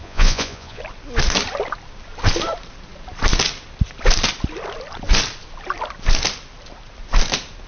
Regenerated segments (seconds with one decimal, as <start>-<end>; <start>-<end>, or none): 0.0-0.8